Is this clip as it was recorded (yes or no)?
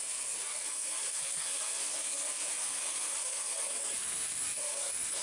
no